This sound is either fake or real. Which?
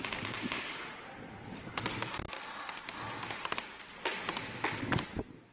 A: real